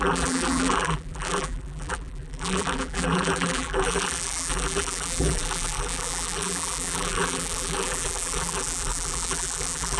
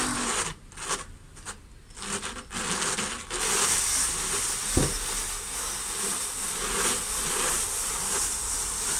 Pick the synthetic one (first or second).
first